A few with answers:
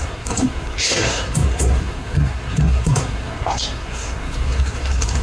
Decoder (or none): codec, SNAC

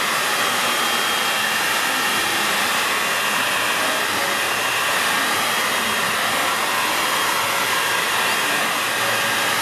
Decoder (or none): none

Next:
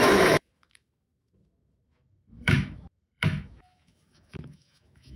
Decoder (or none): autoencoder, DAC-VAE